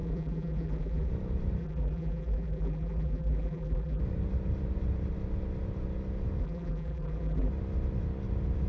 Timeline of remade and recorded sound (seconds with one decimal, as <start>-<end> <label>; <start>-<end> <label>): 0.0-1.1 remade; 1.1-1.6 recorded; 1.6-4.0 remade; 4.0-6.4 recorded; 6.4-7.5 remade; 7.5-8.7 recorded